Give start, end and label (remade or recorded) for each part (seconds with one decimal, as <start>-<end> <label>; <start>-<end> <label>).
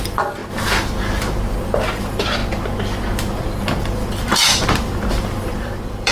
0.0-0.4 remade; 0.4-2.0 recorded; 2.0-2.4 remade; 2.4-4.1 recorded; 4.1-6.1 remade